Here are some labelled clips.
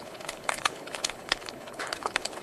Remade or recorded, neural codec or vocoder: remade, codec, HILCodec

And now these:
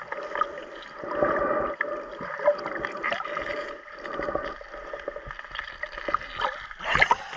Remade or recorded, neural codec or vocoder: recorded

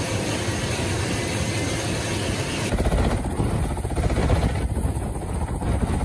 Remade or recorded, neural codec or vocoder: recorded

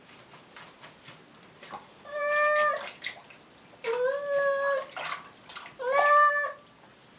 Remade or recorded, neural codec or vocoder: recorded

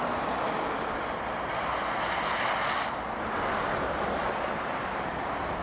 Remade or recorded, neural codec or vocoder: recorded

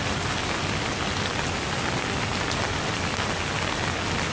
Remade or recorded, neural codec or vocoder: recorded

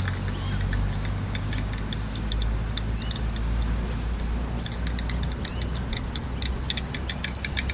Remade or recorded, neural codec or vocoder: recorded